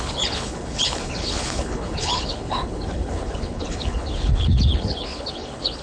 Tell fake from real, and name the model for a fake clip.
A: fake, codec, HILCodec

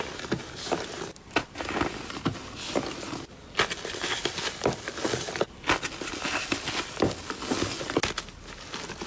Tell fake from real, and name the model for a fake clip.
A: real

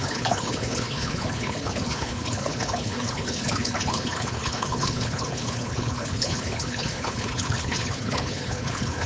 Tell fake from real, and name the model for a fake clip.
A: fake, codec, HILCodec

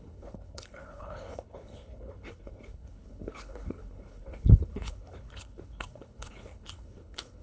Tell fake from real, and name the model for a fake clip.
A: fake, codec, HILCodec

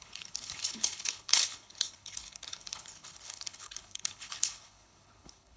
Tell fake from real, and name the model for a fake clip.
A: fake, codec, HILCodec